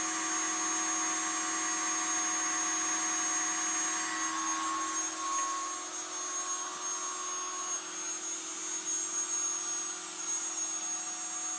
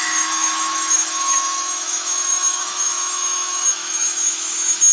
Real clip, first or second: first